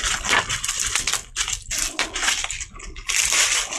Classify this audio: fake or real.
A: real